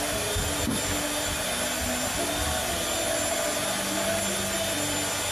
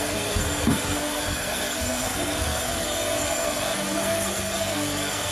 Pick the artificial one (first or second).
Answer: second